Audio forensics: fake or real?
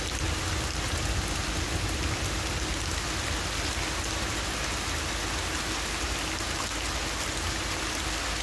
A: real